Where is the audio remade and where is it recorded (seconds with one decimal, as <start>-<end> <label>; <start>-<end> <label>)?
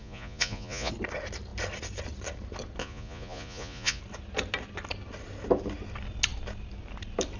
0.0-0.9 remade; 0.9-2.8 recorded; 2.8-4.0 remade; 4.0-7.4 recorded